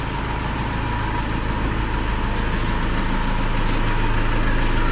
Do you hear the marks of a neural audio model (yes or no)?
no